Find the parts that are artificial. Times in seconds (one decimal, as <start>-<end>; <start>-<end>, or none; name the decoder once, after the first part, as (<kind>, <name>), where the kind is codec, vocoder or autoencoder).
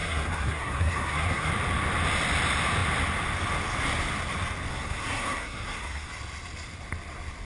0.0-1.5 (codec, SNAC); 4.7-6.1